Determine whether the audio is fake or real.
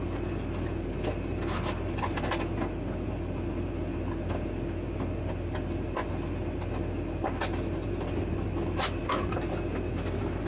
real